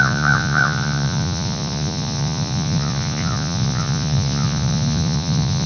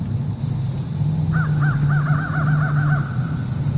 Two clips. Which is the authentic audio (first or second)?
second